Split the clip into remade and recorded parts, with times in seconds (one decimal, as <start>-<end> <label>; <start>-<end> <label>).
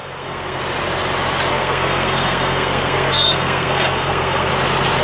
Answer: 0.0-0.6 remade; 0.6-1.5 recorded; 1.5-4.5 remade; 4.5-5.0 recorded